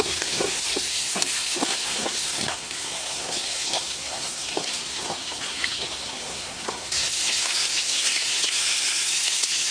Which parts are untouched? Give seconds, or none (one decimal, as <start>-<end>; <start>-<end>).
none